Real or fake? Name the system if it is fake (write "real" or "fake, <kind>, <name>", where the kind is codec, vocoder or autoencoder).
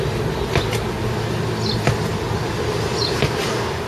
real